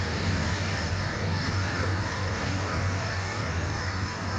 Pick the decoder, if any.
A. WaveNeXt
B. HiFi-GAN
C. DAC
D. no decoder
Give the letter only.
C